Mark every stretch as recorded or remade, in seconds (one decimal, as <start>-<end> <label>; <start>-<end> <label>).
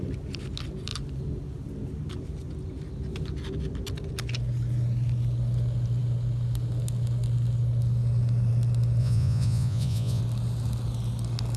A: 0.0-9.0 recorded; 9.0-10.2 remade; 10.2-11.6 recorded